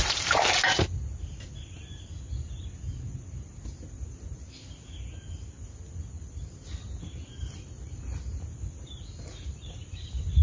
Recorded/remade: recorded